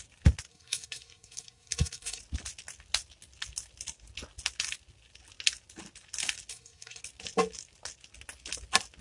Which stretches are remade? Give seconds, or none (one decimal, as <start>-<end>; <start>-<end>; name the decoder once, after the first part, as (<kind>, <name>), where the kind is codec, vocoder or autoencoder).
0.5-2.2 (codec, SNAC); 6.5-7.0